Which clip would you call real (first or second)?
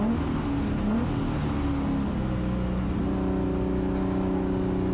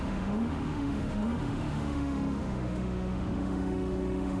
first